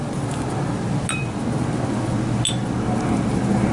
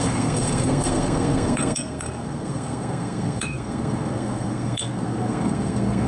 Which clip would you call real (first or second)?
first